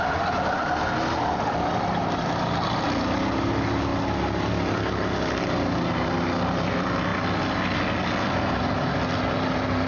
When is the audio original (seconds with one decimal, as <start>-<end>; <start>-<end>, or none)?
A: 0.0-9.9